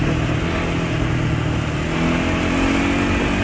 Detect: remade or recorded recorded